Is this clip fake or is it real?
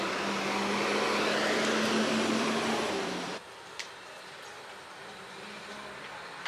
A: real